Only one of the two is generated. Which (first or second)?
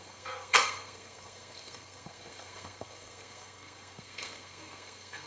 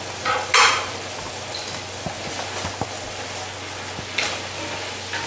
first